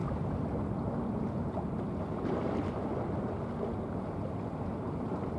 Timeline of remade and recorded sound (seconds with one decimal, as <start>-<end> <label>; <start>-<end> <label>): 0.0-5.4 recorded